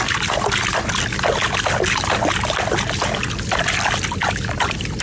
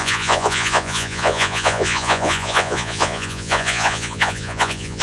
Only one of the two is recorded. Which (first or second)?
first